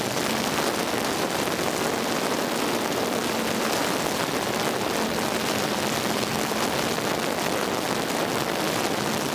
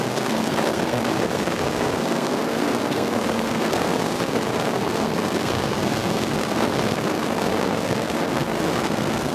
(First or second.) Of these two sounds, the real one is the first